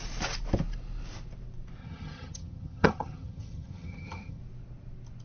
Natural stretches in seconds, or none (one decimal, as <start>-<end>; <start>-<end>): 0.0-1.8; 4.4-5.2